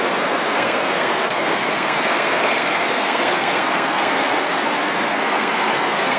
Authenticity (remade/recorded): remade